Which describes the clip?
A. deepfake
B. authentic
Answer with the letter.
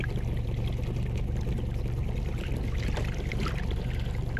B